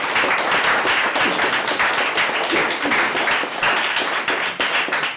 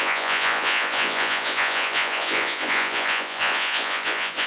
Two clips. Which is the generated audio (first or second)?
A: second